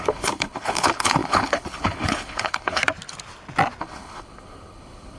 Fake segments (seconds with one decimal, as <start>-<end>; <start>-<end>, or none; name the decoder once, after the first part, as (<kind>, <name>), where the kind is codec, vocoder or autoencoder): 0.0-2.8 (codec, HILCodec); 3.8-5.2

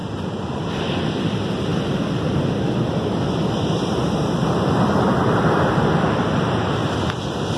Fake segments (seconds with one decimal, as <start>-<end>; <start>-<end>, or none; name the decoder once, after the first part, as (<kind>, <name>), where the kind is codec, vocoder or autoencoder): none

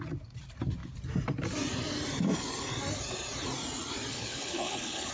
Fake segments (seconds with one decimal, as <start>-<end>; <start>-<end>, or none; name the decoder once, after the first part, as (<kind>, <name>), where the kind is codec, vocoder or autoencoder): 4.1-5.1 (codec, HILCodec)

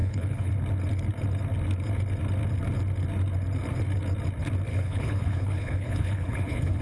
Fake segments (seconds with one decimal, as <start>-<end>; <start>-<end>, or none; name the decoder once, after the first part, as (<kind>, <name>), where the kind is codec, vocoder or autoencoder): 0.0-0.5 (codec, HILCodec); 4.7-6.8

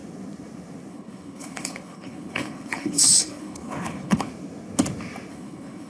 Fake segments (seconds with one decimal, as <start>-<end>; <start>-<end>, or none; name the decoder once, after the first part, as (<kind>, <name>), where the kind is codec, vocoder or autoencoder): 0.9-4.3 (codec, HILCodec); 5.3-5.9

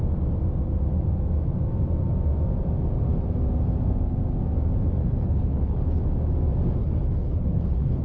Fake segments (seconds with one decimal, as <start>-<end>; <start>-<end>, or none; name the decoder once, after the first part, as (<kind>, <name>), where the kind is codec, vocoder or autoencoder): 5.0-6.0 (codec, HILCodec); 6.8-8.0

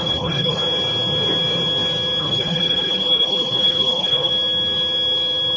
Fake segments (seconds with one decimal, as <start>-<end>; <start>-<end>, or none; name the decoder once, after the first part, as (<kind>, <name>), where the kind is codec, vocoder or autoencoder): 0.0-0.6 (codec, HILCodec); 2.2-4.3